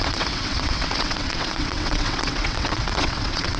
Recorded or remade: remade